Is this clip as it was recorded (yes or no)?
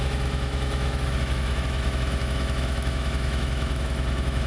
no